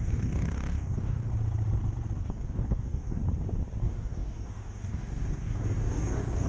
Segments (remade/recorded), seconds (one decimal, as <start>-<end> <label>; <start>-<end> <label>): 0.0-1.3 remade; 1.3-2.3 recorded; 2.3-3.2 remade; 3.2-3.8 recorded; 3.8-6.5 remade